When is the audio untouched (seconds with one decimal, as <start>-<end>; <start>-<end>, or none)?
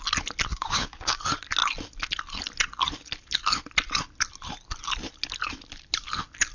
0.0-0.5; 1.2-6.5